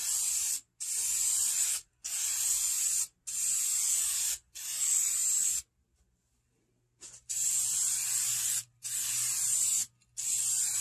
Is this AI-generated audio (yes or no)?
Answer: no